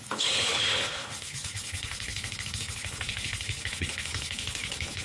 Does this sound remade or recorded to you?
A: remade